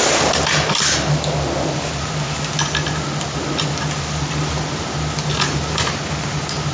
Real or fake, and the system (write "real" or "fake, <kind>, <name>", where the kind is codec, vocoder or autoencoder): real